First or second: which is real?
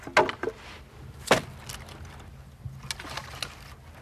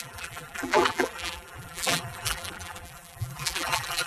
first